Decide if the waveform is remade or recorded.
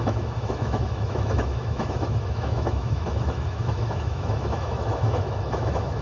remade